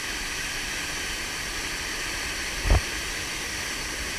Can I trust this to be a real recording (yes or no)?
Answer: no